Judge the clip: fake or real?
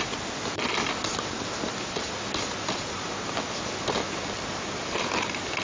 real